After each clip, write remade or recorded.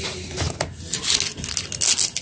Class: recorded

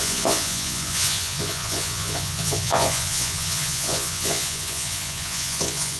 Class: remade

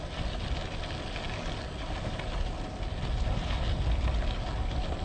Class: recorded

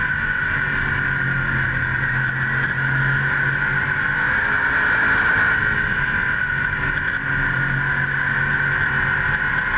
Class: recorded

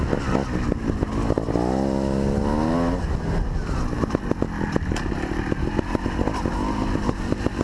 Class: recorded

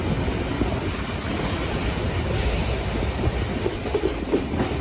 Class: recorded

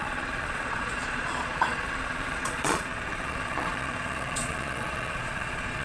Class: remade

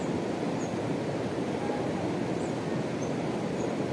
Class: recorded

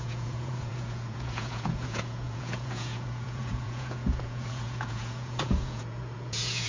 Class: remade